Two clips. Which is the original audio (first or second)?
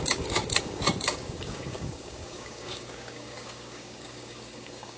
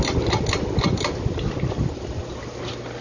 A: second